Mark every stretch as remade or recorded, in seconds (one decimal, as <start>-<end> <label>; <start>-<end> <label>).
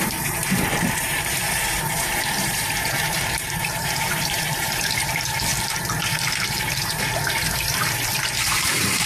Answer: 0.0-9.1 remade